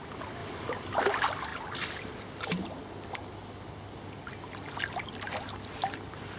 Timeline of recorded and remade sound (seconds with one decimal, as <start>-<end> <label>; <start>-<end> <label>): 0.0-6.4 recorded